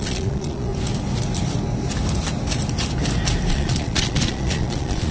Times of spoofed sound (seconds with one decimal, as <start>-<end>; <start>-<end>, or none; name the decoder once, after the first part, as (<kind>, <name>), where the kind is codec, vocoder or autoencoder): 0.0-0.7 (vocoder, Vocos); 3.5-5.1